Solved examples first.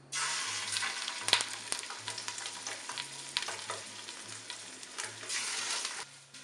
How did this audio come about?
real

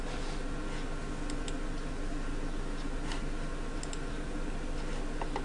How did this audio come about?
real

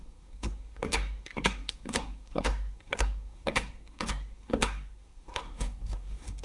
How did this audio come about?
fake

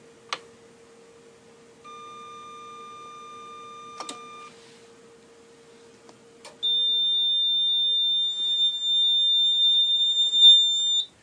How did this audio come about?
real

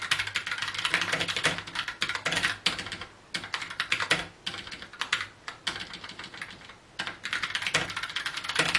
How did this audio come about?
real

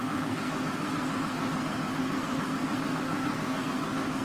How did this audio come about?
fake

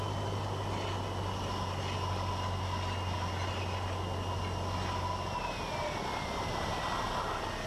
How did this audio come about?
real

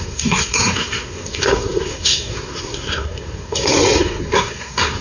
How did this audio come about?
fake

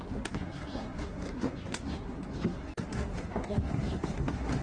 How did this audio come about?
fake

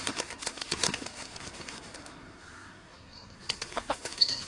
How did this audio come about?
fake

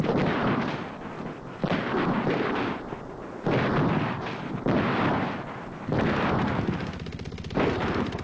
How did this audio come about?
real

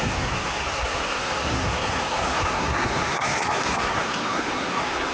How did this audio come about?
fake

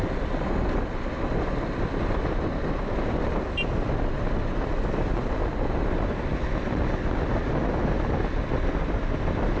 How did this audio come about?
real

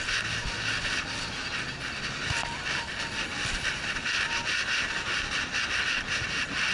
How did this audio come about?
real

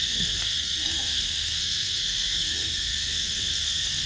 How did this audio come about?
fake